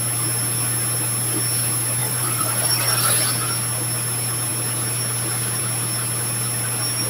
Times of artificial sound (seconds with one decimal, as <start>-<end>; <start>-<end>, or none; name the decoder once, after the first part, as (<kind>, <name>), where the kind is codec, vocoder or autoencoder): 2.0-3.1 (vocoder, BigVGAN v2)